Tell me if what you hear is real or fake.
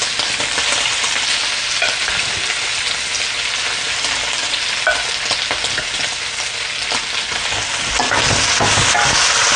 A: real